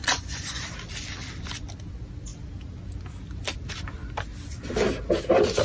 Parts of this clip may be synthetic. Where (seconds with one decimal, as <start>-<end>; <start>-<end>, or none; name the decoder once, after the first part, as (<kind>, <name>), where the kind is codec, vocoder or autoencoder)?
0.0-0.6 (vocoder, Vocos)